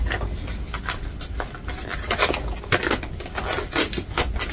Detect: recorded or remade recorded